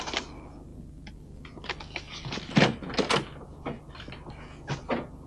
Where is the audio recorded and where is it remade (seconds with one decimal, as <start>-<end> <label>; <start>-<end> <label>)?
0.0-5.3 recorded